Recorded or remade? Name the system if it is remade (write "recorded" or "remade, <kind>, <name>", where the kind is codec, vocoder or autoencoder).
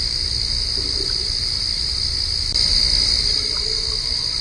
recorded